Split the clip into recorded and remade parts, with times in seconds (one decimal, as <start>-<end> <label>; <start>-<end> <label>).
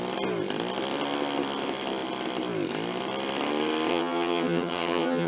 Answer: 0.0-3.9 recorded; 3.9-5.3 remade